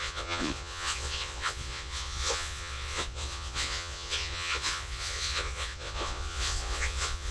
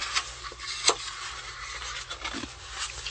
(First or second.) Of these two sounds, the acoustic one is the second